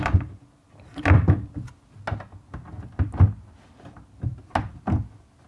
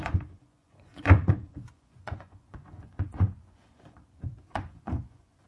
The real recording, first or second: first